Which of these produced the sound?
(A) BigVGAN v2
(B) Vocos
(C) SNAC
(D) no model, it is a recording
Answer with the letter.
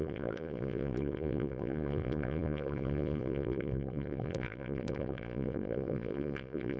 B